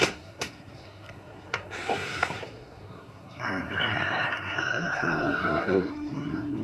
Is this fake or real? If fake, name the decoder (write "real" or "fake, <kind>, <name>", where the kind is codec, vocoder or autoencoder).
fake, codec, SNAC